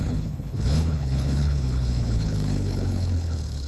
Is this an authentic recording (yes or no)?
no